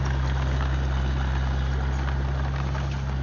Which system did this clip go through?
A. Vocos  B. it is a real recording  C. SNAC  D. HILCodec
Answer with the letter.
B